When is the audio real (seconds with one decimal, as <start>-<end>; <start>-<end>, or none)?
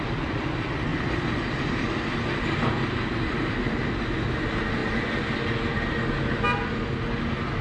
0.0-0.9; 3.5-7.6